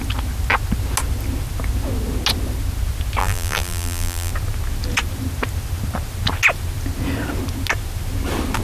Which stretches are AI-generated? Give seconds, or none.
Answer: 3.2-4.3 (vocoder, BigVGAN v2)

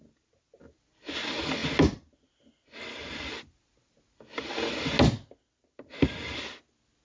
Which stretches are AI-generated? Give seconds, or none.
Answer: none

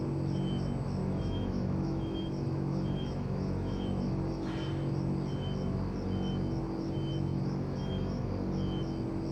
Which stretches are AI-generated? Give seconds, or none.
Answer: 1.0-4.5 (autoencoder, DAC-VAE); 7.3-8.3

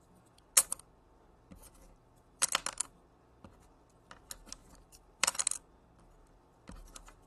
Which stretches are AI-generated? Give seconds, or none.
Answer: 1.6-2.5 (vocoder, BigVGAN v2); 4.6-5.4

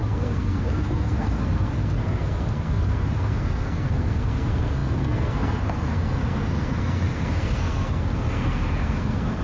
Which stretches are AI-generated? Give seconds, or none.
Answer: 0.0-9.4 (codec, SNAC)

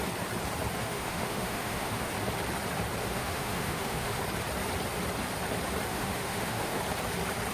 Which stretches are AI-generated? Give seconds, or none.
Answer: 0.8-2.1 (autoencoder, DAC-VAE); 3.0-4.2; 5.9-6.8